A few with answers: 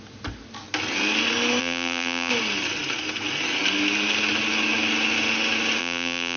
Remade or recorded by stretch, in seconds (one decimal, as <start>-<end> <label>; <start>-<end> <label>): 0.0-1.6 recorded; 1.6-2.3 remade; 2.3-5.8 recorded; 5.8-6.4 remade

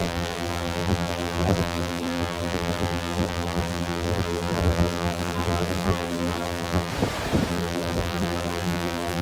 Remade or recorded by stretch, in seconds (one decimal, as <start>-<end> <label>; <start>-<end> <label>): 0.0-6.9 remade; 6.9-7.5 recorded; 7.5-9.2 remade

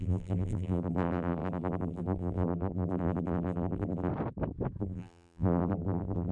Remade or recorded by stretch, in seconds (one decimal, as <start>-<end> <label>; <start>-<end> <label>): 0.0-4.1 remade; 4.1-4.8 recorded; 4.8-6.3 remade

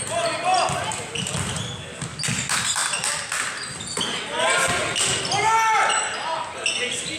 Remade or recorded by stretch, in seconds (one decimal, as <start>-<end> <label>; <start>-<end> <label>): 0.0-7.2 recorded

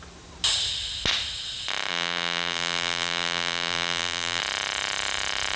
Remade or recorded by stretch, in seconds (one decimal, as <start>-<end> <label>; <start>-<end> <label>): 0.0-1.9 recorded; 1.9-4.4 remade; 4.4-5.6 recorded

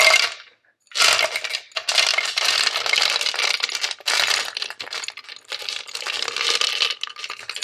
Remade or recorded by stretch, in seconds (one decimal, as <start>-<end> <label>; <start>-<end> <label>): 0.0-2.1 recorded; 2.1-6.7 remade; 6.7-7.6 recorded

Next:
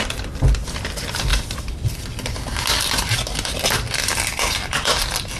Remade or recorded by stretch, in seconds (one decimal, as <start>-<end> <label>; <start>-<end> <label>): 0.0-1.3 remade; 1.3-4.5 recorded; 4.5-5.4 remade

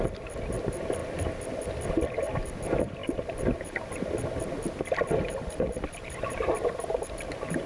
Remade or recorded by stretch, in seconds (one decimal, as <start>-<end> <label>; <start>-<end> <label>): 0.0-1.0 remade; 1.0-2.2 recorded; 2.2-7.7 remade